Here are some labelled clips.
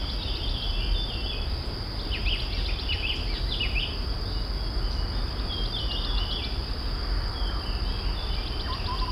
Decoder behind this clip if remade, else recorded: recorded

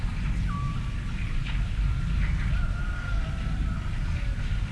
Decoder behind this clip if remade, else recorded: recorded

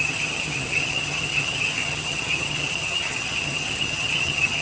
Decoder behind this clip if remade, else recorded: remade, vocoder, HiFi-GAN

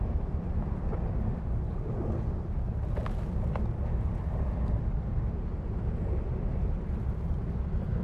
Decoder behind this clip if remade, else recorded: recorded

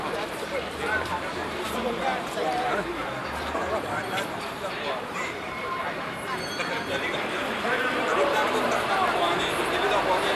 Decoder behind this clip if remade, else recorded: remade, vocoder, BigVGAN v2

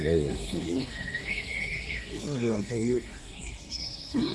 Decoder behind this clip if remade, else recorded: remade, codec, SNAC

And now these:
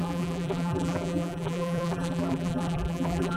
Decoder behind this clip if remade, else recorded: remade, vocoder, BigVGAN v2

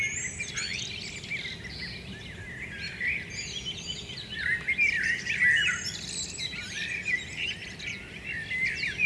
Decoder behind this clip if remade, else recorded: recorded